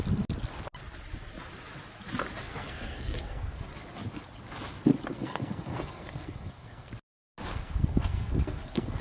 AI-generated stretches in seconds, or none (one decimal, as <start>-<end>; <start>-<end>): 2.4-3.6; 5.1-6.9; 7.5-9.0